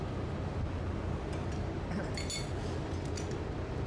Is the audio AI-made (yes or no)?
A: no